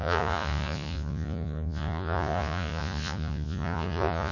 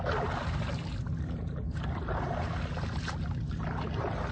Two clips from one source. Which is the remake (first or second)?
first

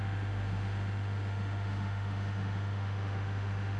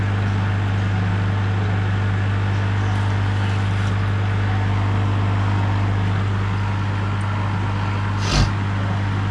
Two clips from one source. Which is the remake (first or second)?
first